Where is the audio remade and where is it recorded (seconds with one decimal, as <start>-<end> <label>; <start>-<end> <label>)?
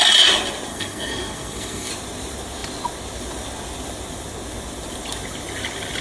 0.0-0.7 recorded; 0.7-1.9 remade; 1.9-6.0 recorded